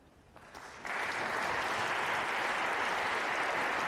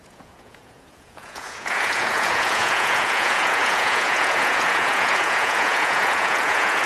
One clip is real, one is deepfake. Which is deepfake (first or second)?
second